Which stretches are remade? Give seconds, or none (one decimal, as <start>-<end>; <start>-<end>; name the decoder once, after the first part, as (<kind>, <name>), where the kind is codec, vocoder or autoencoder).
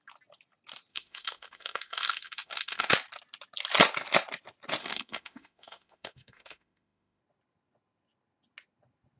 0.9-2.9 (autoencoder, DAC-VAE); 4.8-7.2